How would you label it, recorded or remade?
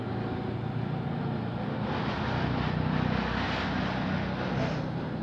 recorded